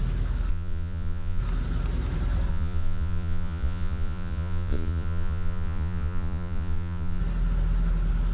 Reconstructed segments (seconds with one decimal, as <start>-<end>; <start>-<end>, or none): 0.5-1.4; 2.5-7.2